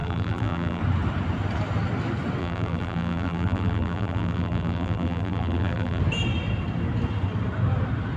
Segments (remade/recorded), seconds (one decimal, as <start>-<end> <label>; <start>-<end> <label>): 0.0-0.8 remade; 0.8-2.4 recorded; 2.4-6.0 remade; 6.0-8.2 recorded